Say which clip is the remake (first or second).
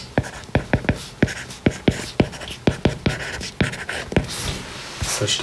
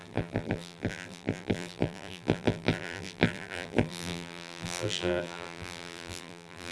second